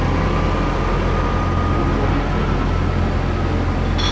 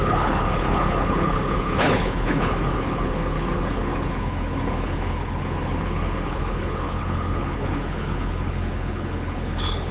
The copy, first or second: second